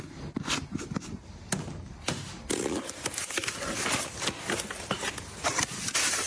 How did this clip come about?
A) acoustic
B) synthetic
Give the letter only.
A